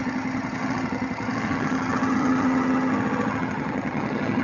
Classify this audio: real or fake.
fake